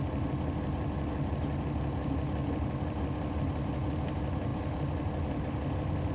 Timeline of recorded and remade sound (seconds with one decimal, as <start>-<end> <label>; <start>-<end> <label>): 0.0-6.1 recorded

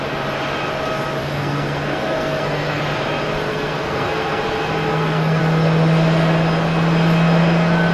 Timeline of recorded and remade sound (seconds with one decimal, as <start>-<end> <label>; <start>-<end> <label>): 0.0-1.2 recorded; 1.2-2.8 remade; 2.8-3.5 recorded; 3.5-4.4 remade; 4.4-4.9 recorded; 4.9-5.4 remade; 5.4-7.9 recorded

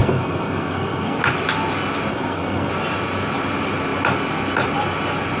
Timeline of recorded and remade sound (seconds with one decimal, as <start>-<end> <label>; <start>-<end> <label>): 0.0-1.2 remade; 1.2-2.1 recorded; 2.1-2.7 remade; 2.7-5.4 recorded

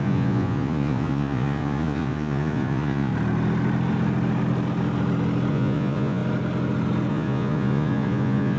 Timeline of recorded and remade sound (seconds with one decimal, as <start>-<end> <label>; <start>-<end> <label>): 0.0-3.1 remade; 3.1-5.5 recorded; 5.5-6.2 remade; 6.2-7.1 recorded; 7.1-8.6 remade